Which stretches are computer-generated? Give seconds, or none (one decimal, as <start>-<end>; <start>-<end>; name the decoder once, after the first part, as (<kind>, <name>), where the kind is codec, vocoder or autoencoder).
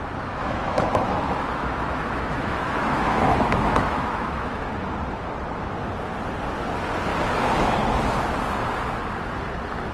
0.4-4.7 (autoencoder, DAC-VAE)